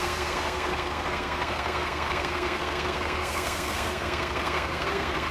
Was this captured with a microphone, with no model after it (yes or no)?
no